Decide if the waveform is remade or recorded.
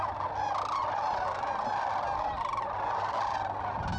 recorded